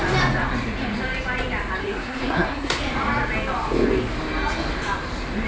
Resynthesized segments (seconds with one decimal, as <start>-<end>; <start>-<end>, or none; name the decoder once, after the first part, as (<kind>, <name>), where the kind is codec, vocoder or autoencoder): 1.8-2.8 (codec, SNAC)